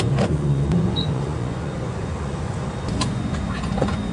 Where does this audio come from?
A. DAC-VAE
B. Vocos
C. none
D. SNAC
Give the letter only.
B